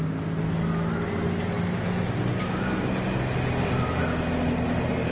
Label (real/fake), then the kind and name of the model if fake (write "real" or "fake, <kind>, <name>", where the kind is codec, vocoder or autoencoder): real